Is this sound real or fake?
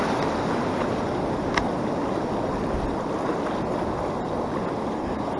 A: real